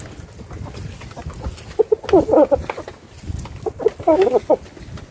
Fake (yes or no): no